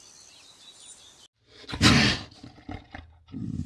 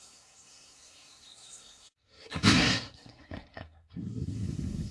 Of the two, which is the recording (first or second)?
first